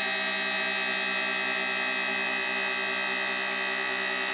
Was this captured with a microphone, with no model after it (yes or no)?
yes